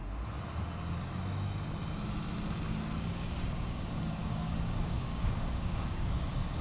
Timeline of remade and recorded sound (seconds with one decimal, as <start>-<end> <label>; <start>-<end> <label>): 0.0-3.0 recorded; 3.0-6.6 remade